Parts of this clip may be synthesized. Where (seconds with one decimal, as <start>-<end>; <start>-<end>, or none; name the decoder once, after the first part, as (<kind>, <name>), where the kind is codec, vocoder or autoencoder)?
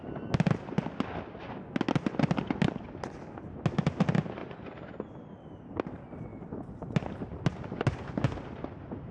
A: 4.4-5.3 (vocoder, BigVGAN v2)